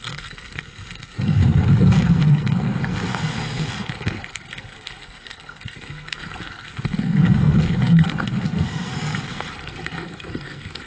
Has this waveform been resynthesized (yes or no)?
yes